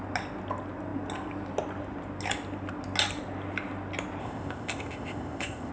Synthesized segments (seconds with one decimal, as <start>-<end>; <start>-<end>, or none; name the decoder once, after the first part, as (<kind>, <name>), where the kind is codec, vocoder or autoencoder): 4.2-5.7 (codec, ZipCodec)